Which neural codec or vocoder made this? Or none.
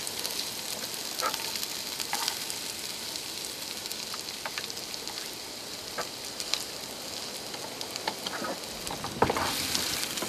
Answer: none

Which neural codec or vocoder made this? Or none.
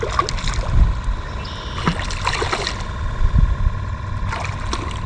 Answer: none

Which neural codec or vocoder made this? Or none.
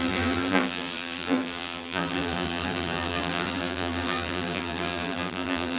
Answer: vocoder, BigVGAN v2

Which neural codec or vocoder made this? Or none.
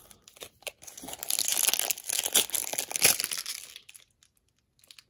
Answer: none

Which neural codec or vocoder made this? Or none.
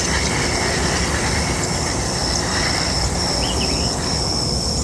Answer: vocoder, BigVGAN v2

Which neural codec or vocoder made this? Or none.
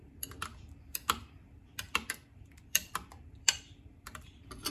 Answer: vocoder, BigVGAN v2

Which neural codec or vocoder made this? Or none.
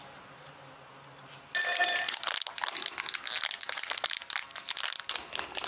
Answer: vocoder, BigVGAN v2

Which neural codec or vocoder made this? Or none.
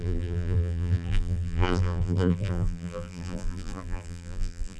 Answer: vocoder, BigVGAN v2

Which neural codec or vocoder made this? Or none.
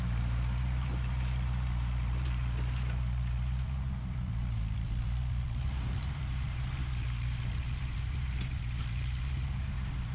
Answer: vocoder, BigVGAN v2